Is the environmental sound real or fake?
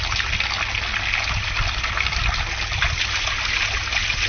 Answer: real